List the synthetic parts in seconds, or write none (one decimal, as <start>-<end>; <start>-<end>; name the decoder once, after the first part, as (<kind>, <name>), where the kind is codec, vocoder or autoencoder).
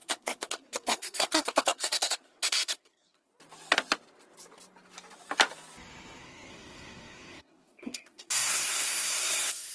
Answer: 0.0-3.3 (codec, SNAC); 6.2-9.7